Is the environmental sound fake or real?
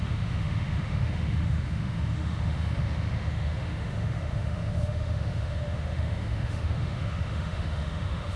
fake